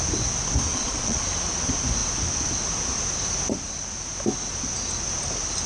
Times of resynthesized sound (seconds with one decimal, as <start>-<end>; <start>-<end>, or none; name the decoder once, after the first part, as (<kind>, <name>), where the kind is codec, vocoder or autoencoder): 0.7-1.2 (vocoder, Vocos)